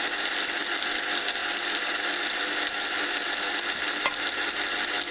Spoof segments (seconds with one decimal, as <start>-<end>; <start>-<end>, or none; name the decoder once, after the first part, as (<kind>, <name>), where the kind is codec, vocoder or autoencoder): none